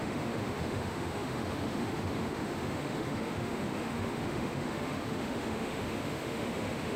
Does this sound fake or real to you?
fake